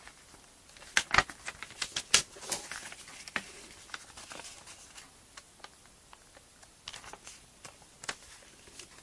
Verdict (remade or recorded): recorded